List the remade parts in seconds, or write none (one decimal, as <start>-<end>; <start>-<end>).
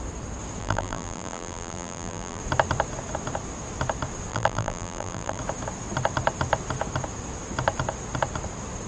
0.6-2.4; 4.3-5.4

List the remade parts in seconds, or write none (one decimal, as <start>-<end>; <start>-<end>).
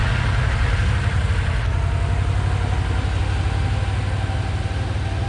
none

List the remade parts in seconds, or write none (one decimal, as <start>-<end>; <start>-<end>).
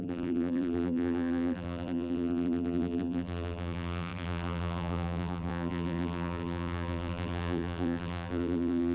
0.0-8.9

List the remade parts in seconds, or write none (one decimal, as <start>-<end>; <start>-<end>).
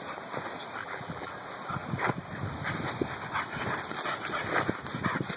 0.8-1.3